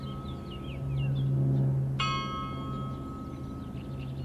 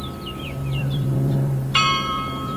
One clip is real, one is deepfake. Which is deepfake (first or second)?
second